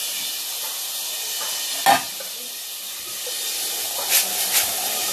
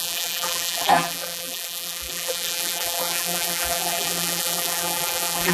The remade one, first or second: second